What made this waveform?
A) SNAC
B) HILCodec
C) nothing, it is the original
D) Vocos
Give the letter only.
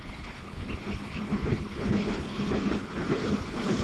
B